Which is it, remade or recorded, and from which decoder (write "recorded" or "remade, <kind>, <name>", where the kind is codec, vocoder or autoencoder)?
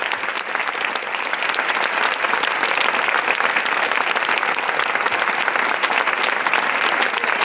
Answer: recorded